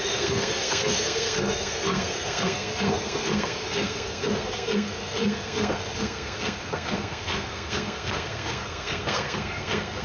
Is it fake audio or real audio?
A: fake